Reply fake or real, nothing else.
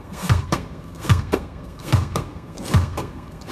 fake